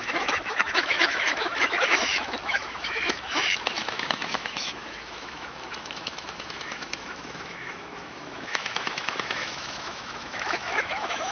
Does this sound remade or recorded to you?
remade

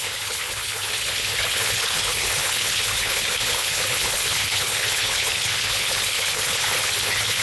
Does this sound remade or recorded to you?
remade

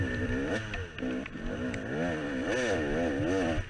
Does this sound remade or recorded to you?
recorded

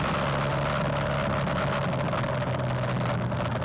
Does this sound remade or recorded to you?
recorded